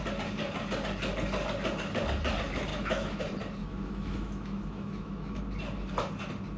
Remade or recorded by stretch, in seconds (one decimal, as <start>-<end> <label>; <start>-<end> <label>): 0.0-2.7 recorded; 2.7-3.2 remade; 3.2-3.6 recorded; 3.6-5.4 remade; 5.4-6.6 recorded